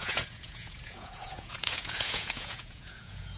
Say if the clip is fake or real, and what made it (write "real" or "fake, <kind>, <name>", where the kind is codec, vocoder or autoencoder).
fake, vocoder, Vocos